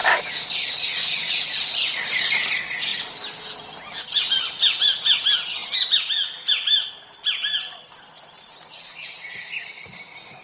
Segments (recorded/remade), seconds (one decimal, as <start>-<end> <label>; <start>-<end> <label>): 0.0-10.4 recorded